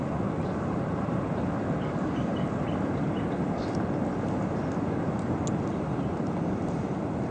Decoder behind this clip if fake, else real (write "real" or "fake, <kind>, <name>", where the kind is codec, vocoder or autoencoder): real